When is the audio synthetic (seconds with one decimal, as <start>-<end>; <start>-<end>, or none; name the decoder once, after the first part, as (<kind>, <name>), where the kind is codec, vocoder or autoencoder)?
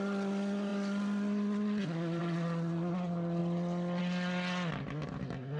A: none